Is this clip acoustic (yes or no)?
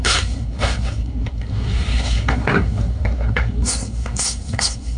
no